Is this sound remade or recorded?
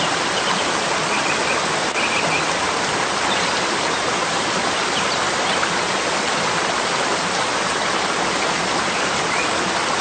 recorded